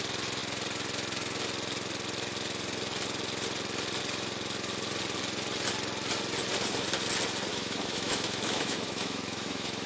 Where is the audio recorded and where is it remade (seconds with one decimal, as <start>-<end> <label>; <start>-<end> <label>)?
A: 0.0-7.5 recorded; 7.5-9.9 remade